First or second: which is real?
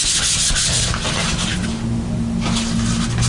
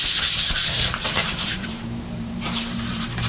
first